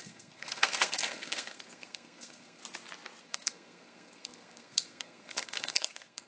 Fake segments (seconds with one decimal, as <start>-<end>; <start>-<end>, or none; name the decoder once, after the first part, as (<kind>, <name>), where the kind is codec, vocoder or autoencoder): 0.0-2.6 (codec, SNAC); 3.2-6.3